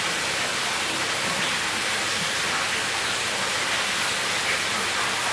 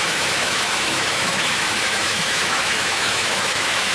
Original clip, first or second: first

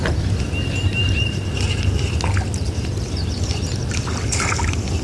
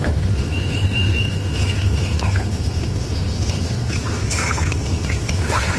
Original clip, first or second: first